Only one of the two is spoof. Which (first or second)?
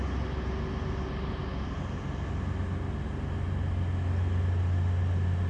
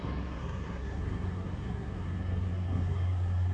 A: second